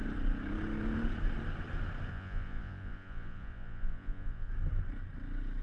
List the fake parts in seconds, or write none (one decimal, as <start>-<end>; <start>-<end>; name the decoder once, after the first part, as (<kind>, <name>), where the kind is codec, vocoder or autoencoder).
2.1-4.5 (vocoder, Vocos)